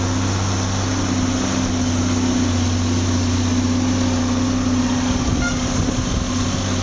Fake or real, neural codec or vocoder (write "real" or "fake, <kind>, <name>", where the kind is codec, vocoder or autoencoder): real